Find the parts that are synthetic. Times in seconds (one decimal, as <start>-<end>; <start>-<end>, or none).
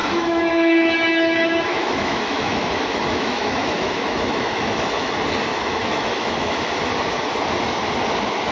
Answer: 0.0-5.1; 5.5-6.7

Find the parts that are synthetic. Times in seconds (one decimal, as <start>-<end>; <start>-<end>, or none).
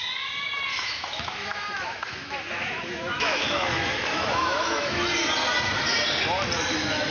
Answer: 0.7-5.0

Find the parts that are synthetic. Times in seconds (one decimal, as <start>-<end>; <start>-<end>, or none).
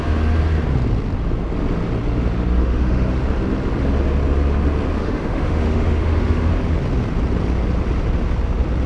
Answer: 2.6-3.1; 5.0-6.5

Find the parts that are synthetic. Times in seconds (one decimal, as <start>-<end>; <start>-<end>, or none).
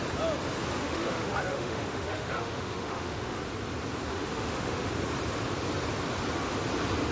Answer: 0.8-3.4; 4.1-4.9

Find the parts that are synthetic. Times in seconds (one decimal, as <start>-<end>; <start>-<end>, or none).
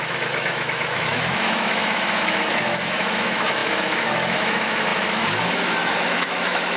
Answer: 0.0-6.8